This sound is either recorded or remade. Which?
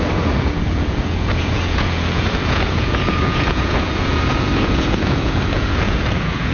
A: remade